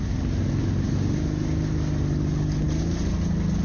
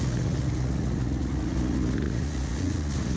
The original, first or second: first